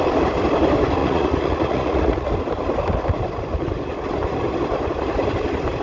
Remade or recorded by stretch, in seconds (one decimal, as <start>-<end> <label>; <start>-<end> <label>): 0.0-1.0 recorded; 1.0-2.3 remade; 2.3-5.8 recorded